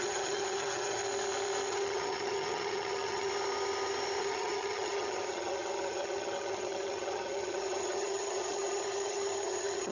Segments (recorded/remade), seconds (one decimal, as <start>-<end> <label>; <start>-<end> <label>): 0.0-1.0 remade; 1.0-1.7 recorded; 1.7-3.3 remade; 3.3-4.2 recorded; 4.2-9.9 remade